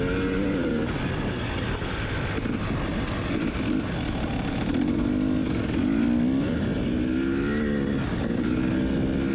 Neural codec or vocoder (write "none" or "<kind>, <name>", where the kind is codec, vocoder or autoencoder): none